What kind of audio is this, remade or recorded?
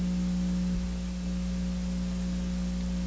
recorded